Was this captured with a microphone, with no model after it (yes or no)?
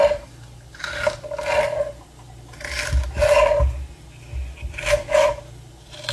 yes